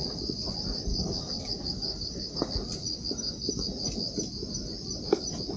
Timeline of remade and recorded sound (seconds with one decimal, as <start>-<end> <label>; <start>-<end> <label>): 0.0-0.9 recorded; 0.9-2.4 remade; 2.4-5.6 recorded